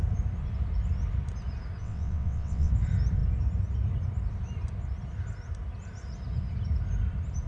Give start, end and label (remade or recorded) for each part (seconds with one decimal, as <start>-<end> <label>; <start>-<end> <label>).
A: 0.0-1.8 recorded; 1.8-2.7 remade; 2.7-7.5 recorded